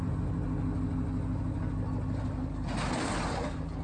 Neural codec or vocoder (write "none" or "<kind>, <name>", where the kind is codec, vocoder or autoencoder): none